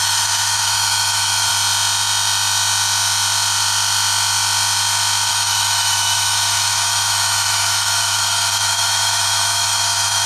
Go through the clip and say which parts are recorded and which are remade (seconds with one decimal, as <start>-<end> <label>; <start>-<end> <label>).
0.0-1.5 remade; 1.5-5.3 recorded; 5.3-10.3 remade